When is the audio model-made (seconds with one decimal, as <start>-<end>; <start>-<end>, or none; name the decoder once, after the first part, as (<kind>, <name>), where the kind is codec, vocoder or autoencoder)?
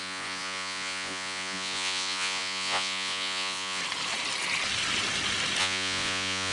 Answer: 0.0-3.8 (vocoder, Vocos); 5.6-6.5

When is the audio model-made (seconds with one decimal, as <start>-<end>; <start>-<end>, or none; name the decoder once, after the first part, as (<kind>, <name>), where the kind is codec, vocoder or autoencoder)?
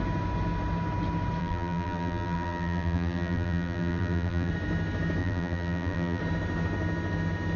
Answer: 1.4-4.5 (vocoder, BigVGAN v2); 5.2-6.2